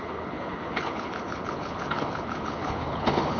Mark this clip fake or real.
fake